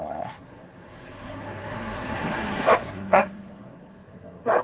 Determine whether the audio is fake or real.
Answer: fake